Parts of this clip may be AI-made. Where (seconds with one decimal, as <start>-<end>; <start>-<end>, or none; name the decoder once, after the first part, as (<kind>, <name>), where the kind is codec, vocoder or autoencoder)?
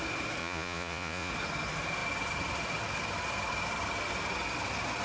0.4-1.3 (vocoder, Vocos)